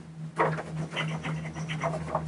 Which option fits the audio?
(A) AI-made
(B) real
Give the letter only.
B